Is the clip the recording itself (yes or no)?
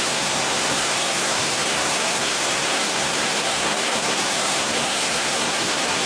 no